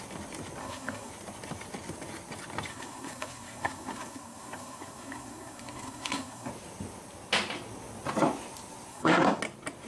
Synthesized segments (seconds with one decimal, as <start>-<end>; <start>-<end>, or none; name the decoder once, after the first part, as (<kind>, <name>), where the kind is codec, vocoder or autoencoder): 0.6-1.1 (codec, SNAC); 2.7-6.5; 8.9-9.4

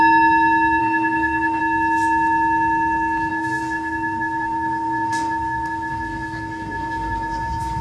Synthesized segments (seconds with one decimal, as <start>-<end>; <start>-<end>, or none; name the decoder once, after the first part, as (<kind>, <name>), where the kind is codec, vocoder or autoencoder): 0.8-1.6 (codec, SNAC); 3.3-7.8

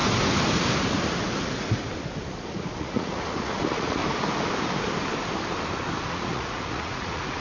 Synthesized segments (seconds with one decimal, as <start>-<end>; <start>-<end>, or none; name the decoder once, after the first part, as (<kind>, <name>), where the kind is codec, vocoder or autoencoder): 2.5-4.0 (vocoder, Vocos); 6.1-7.4